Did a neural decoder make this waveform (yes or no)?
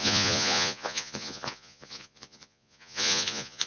yes